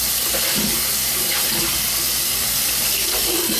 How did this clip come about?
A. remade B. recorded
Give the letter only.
B